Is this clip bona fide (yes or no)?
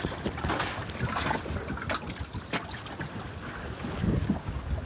yes